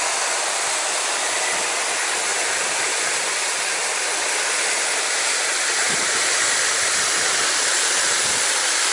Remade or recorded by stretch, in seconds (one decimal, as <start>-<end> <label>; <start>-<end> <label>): 0.0-8.9 recorded